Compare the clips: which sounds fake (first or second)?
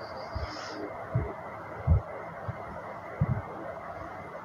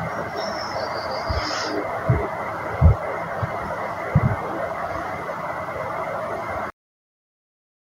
second